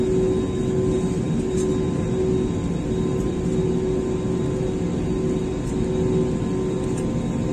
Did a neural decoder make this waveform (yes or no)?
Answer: no